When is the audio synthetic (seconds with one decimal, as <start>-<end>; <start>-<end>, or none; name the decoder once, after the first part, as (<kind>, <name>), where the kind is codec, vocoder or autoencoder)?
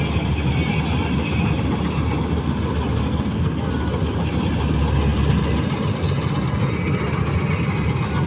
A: 3.0-3.7 (codec, SNAC)